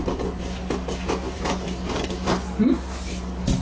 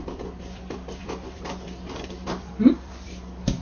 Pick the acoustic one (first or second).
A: first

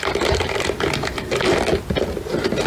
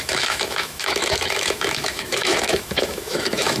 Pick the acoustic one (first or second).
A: first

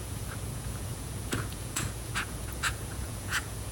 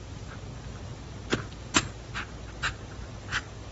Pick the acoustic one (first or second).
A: second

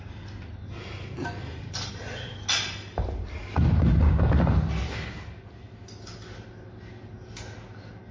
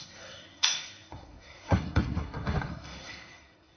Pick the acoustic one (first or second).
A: first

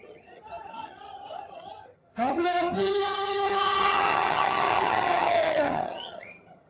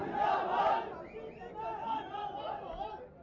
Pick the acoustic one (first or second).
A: second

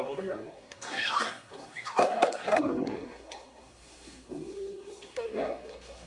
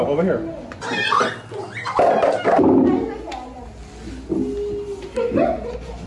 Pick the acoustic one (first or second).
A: second